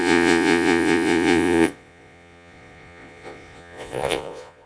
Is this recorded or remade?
remade